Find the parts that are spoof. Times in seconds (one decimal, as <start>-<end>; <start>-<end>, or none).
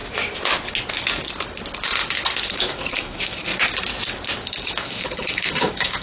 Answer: 2.5-3.5; 4.4-6.0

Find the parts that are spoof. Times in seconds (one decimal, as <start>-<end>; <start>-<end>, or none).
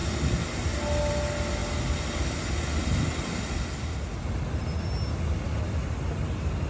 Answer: none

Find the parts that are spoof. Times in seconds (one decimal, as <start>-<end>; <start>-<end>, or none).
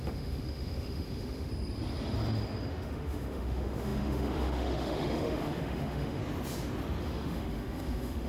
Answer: 0.0-1.5; 2.7-6.2; 7.0-8.3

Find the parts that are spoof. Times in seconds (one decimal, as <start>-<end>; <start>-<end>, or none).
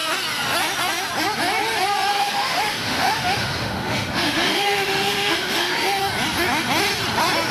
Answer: 2.1-6.0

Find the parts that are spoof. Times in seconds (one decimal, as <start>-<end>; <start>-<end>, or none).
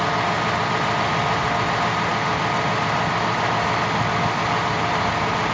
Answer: none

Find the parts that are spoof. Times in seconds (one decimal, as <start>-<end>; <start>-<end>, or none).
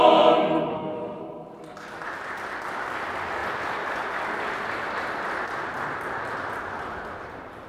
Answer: 0.7-1.2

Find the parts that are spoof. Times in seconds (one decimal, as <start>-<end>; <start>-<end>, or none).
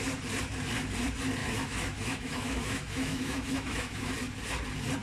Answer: 1.4-4.1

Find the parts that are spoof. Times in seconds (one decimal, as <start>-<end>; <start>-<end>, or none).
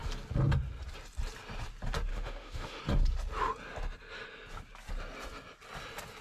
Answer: 2.1-2.8